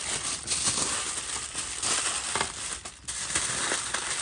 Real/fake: real